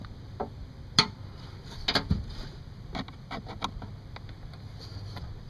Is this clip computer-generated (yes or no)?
no